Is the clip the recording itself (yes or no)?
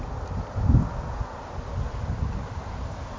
yes